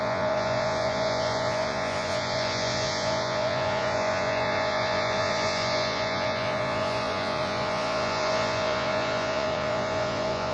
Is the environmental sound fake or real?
fake